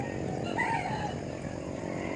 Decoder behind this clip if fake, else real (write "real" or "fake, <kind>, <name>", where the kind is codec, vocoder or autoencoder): real